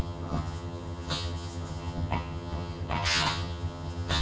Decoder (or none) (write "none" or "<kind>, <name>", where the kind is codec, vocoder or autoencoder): vocoder, HiFi-GAN